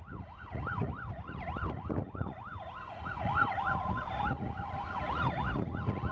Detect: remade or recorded remade